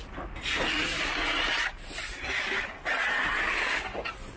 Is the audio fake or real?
real